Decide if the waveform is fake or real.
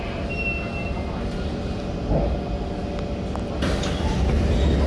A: real